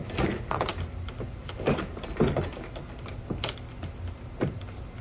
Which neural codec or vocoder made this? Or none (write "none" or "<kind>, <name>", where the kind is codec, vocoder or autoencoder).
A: none